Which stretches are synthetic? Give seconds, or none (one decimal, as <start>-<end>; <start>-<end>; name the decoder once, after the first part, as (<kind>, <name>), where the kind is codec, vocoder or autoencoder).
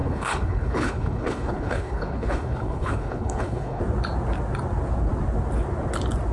0.0-3.8 (codec, HILCodec)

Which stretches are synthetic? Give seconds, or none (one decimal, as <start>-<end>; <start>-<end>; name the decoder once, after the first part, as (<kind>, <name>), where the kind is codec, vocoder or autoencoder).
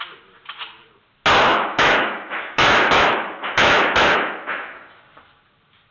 1.5-5.0 (autoencoder, DAC-VAE)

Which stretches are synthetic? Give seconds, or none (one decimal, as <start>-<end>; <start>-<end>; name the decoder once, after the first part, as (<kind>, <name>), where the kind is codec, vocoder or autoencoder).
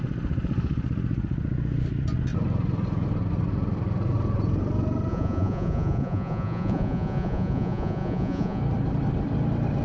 5.1-8.6 (vocoder, Vocos)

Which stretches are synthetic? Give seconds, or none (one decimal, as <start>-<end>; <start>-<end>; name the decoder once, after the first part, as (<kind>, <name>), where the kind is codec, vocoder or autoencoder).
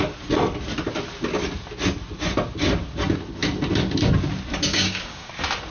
4.7-5.3 (codec, DAC)